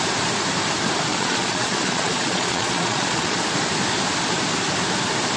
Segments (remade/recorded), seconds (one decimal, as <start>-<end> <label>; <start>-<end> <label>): 0.0-1.1 recorded; 1.1-3.4 remade; 3.4-5.4 recorded

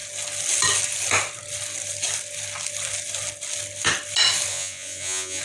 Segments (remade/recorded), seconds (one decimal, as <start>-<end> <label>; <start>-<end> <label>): 0.0-4.5 recorded; 4.5-5.4 remade

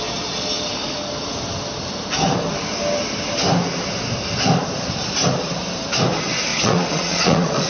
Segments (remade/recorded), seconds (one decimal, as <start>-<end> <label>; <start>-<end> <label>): 0.0-6.5 recorded; 6.5-7.7 remade